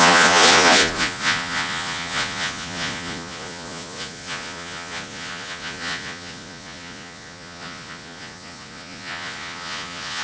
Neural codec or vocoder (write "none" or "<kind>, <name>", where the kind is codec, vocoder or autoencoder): vocoder, Vocos